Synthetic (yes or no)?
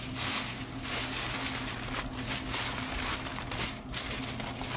no